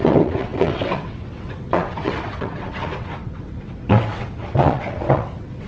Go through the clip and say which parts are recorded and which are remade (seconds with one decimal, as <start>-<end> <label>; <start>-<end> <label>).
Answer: 0.0-5.7 remade